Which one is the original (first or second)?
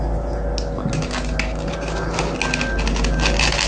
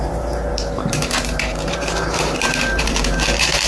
first